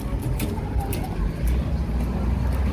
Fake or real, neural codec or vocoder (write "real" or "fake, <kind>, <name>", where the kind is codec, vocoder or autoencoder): real